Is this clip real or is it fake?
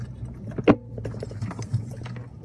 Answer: real